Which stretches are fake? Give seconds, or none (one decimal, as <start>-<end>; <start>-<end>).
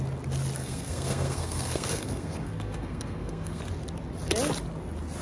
0.6-3.6